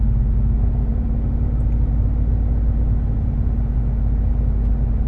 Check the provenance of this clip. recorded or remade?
recorded